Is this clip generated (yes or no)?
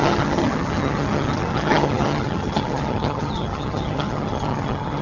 yes